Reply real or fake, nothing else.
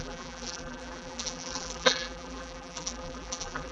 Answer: fake